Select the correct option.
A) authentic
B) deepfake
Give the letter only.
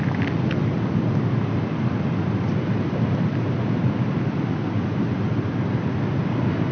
A